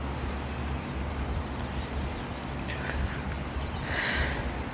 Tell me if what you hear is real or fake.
real